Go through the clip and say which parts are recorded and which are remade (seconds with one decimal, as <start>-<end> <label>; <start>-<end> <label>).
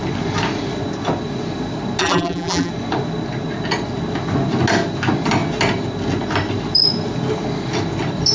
0.0-2.0 recorded; 2.0-2.7 remade; 2.7-8.3 recorded